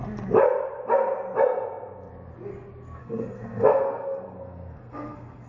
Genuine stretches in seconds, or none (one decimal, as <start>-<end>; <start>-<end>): 0.0-3.0